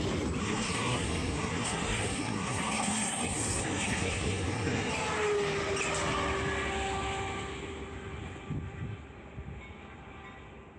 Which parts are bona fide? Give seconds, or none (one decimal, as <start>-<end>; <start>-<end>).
0.0-0.4; 4.9-10.8